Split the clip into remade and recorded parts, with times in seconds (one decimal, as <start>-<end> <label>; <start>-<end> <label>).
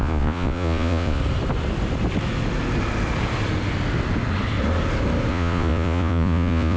0.0-1.2 remade; 1.2-5.3 recorded; 5.3-6.8 remade